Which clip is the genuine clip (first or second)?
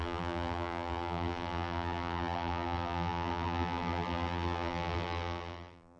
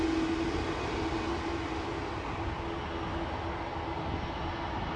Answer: second